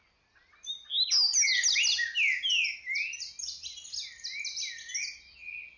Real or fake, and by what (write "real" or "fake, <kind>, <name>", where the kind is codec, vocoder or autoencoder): real